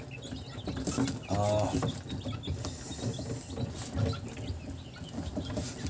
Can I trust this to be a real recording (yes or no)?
yes